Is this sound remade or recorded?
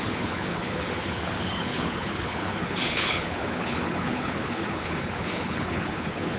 remade